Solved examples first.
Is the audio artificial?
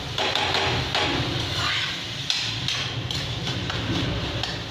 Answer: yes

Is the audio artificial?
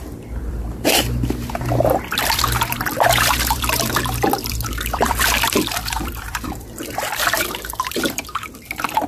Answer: yes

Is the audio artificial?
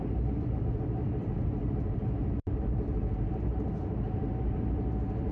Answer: yes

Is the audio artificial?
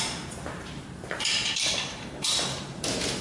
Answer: yes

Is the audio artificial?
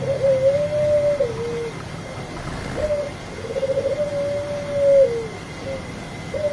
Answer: no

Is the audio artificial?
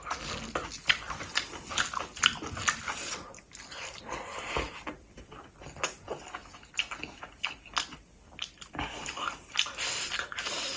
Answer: no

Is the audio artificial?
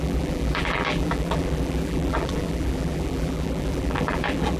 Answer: yes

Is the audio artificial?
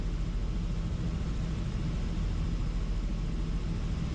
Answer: no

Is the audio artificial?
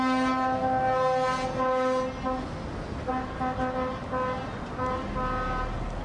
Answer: no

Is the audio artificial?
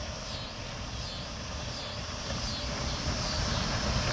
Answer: no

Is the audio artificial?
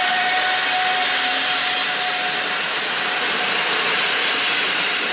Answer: no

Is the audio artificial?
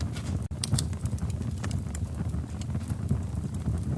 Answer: yes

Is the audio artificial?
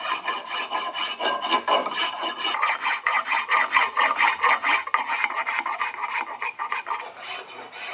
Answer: no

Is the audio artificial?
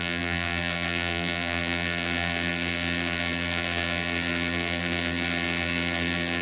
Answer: yes